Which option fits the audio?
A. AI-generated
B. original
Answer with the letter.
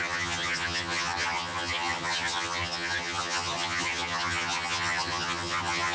A